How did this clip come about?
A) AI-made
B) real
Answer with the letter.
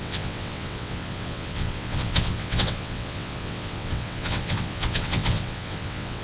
A